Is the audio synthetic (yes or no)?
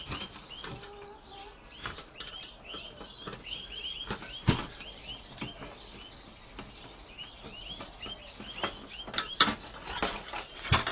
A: no